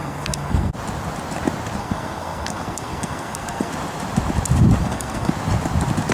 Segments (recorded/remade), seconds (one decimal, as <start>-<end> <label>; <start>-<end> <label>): 0.0-0.7 remade; 0.7-1.8 recorded; 1.8-3.7 remade; 3.7-4.8 recorded; 4.8-5.3 remade; 5.3-6.1 recorded